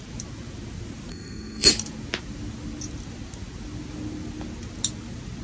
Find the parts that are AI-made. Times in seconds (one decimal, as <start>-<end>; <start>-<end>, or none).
1.1-1.7